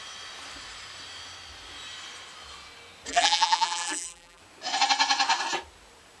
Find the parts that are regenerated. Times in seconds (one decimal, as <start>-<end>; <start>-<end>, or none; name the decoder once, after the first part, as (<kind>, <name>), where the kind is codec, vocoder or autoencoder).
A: 3.1-4.4 (vocoder, BigVGAN v2)